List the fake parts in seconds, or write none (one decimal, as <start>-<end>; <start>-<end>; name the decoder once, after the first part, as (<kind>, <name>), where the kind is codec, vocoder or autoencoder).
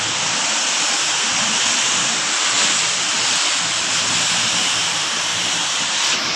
0.0-1.3 (vocoder, BigVGAN v2); 3.7-6.4